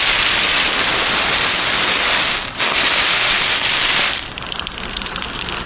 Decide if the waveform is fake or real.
real